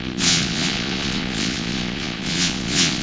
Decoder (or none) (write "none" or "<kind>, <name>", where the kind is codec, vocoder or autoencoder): vocoder, Vocos